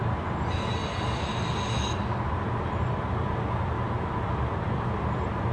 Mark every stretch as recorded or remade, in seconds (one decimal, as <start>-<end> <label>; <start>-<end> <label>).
0.0-5.5 recorded